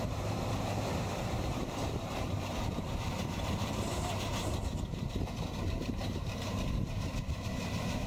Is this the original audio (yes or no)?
no